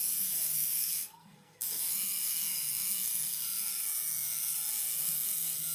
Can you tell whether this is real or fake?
fake